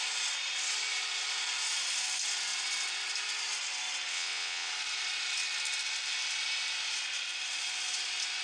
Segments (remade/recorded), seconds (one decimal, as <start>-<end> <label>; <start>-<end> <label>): 0.0-4.1 recorded; 4.1-4.7 remade; 4.7-8.4 recorded